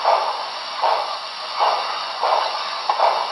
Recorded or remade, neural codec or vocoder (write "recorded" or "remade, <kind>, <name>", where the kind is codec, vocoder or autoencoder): remade, vocoder, Vocos